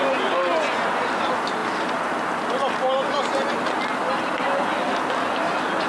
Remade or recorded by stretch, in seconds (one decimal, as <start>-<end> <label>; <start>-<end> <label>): 0.0-0.5 recorded; 0.5-1.2 remade; 1.2-5.9 recorded